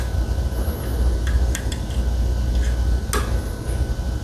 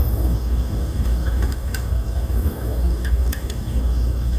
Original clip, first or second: first